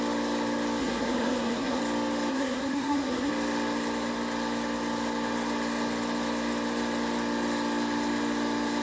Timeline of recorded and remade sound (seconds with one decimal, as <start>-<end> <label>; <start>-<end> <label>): 0.0-0.8 recorded; 0.8-1.8 remade; 1.8-2.3 recorded; 2.3-3.3 remade; 3.3-8.8 recorded